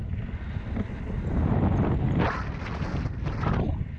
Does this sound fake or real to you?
real